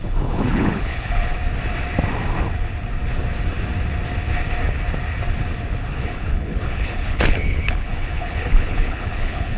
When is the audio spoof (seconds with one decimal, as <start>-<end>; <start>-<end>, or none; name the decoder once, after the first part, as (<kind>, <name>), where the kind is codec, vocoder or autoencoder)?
0.0-1.3 (codec, HILCodec); 5.9-9.6